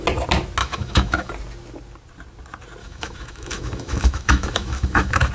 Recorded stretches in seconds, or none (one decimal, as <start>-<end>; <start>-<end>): 0.0-0.6; 1.3-2.8